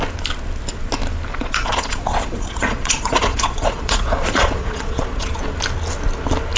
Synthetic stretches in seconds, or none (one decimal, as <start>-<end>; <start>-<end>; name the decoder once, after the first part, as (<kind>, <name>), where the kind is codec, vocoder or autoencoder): 1.3-5.3 (vocoder, Vocos)